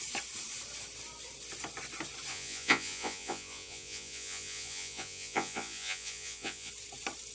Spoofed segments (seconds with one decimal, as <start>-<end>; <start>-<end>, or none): 2.3-6.7